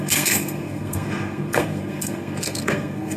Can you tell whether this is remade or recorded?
remade